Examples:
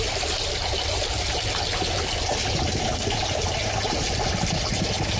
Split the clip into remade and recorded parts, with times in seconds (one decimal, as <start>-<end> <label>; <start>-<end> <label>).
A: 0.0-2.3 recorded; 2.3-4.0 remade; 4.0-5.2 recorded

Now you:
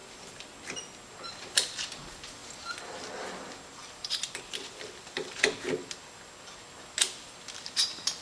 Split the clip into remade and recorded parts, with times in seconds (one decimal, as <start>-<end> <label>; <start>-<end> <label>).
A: 0.0-0.9 remade; 0.9-3.8 recorded; 3.8-5.6 remade; 5.6-8.2 recorded

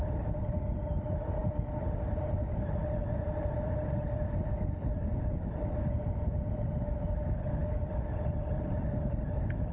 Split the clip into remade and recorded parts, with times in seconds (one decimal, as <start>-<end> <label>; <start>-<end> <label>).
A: 0.0-9.7 recorded

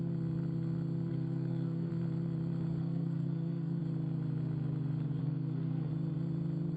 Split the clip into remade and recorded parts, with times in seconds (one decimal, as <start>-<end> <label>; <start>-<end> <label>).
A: 0.0-1.1 recorded; 1.1-1.9 remade; 1.9-2.8 recorded; 2.8-3.8 remade; 3.8-5.2 recorded; 5.2-5.9 remade; 5.9-6.8 recorded

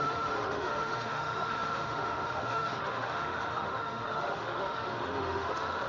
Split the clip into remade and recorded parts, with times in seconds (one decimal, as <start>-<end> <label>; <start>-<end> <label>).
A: 0.0-5.9 remade

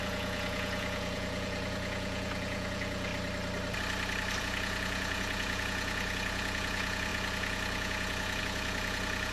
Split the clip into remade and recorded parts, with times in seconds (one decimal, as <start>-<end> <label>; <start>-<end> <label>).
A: 0.0-3.1 remade; 3.1-4.4 recorded; 4.4-9.3 remade